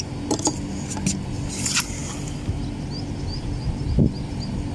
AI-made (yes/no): no